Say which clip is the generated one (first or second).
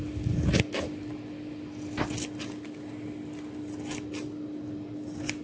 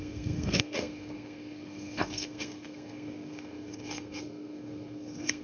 second